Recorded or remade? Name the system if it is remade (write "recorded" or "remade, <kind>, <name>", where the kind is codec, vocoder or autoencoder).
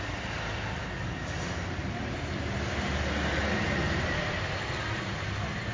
recorded